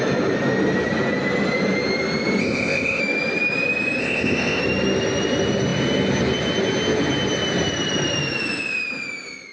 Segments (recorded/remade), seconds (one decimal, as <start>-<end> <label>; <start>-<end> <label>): 0.0-2.4 recorded; 2.4-3.0 remade; 3.0-4.0 recorded; 4.0-4.6 remade; 4.6-9.5 recorded

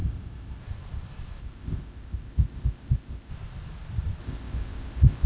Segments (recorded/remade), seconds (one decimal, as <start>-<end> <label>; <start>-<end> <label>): 0.0-0.6 remade; 0.6-1.4 recorded; 1.4-3.3 remade; 3.3-4.2 recorded; 4.2-5.3 remade

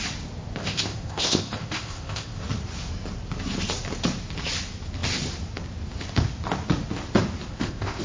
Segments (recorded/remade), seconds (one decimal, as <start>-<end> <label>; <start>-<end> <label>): 0.0-0.6 recorded; 0.6-2.4 remade; 2.4-7.5 recorded; 7.5-8.0 remade